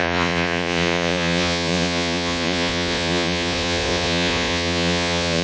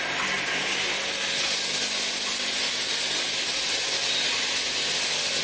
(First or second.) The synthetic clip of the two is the first